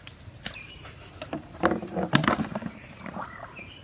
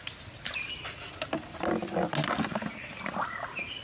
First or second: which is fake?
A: first